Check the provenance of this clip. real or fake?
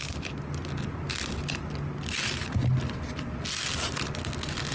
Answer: real